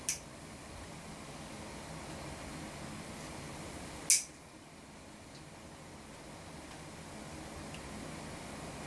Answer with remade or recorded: recorded